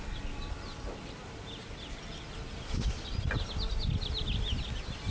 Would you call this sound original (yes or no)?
no